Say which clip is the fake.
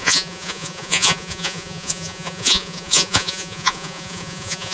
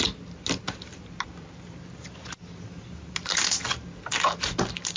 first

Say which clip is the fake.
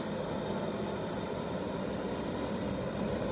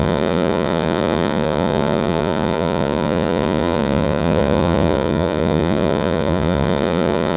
second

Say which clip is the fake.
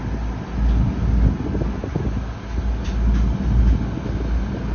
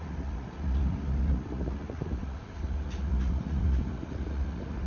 second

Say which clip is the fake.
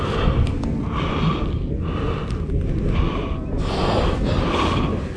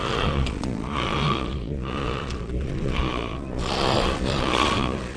second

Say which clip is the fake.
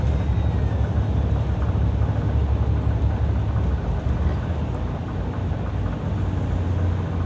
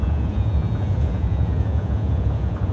second